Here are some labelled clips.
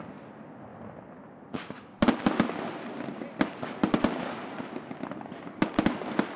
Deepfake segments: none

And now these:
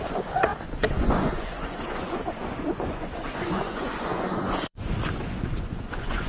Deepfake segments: 0.0-6.3 (vocoder, Vocos)

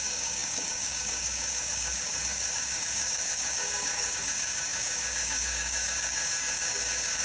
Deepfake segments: 0.0-7.2 (codec, DAC)

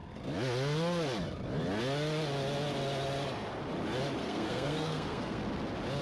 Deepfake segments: 4.2-5.4 (codec, SNAC)

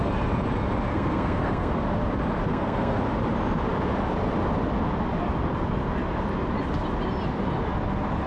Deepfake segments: 0.9-1.7 (codec, SNAC); 2.5-3.0

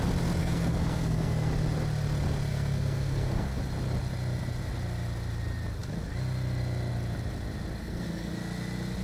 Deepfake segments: 0.4-1.5 (codec, SNAC); 2.5-3.6; 7.8-8.3

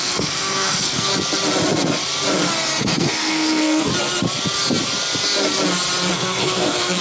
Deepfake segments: 0.0-1.1 (codec, SNAC); 2.8-3.9; 6.1-7.0

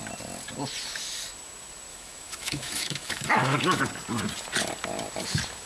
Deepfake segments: 1.9-3.8 (autoencoder, DAC-VAE)